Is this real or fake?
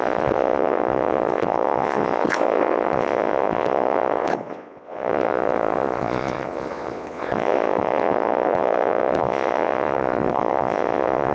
fake